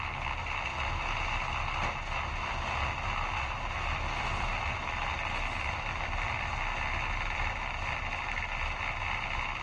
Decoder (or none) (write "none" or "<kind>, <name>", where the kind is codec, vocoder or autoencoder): none